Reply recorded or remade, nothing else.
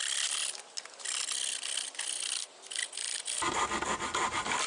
recorded